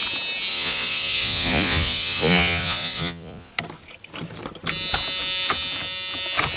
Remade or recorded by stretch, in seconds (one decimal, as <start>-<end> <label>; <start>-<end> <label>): 0.0-0.5 recorded; 0.5-3.5 remade; 3.5-6.6 recorded